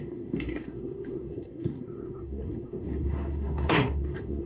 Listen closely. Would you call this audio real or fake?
fake